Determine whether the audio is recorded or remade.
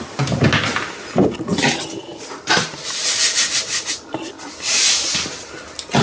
recorded